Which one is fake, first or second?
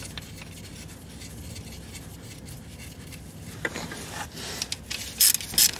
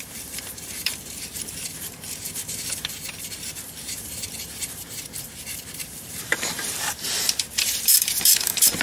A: second